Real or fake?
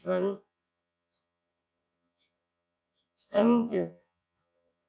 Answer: fake